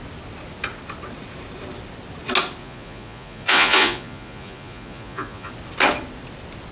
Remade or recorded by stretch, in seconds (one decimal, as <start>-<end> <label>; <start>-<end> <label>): 0.0-2.6 recorded; 2.6-5.5 remade; 5.5-6.7 recorded